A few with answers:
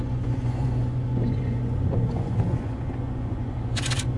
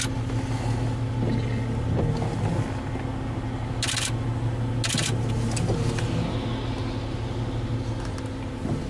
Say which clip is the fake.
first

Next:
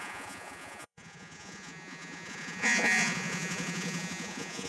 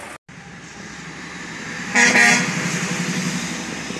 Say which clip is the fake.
first